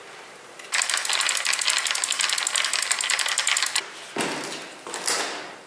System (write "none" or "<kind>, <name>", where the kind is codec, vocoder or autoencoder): none